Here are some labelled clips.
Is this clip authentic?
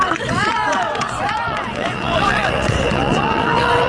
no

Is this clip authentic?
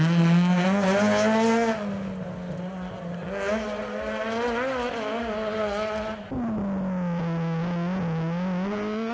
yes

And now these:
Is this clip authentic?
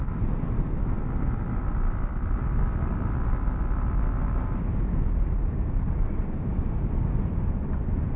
yes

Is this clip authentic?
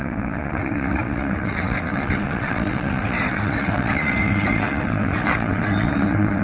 no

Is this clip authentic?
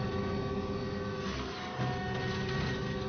yes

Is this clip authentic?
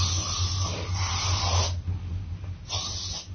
yes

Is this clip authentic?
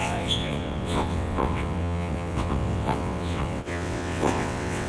no